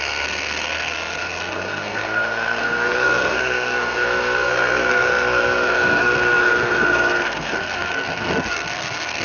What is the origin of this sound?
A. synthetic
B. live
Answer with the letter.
A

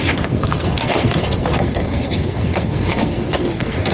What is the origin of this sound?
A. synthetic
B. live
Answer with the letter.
A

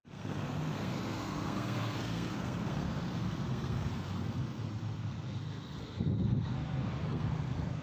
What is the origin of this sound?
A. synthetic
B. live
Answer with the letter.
A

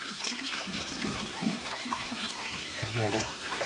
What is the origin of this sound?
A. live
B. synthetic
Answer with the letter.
B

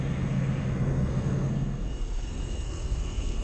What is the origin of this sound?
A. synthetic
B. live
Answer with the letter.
A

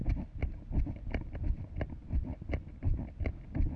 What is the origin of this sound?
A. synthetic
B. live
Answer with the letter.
B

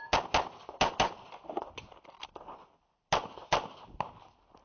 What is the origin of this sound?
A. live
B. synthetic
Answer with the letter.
A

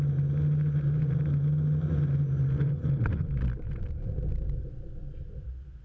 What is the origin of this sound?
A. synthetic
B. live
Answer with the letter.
B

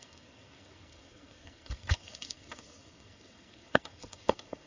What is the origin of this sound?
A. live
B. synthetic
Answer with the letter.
B